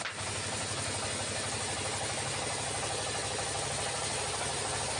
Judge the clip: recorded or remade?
recorded